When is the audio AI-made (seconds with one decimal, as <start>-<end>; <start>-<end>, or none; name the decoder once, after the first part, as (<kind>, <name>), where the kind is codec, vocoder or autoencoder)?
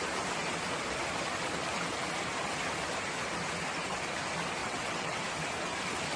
4.6-5.2 (vocoder, WaveNeXt)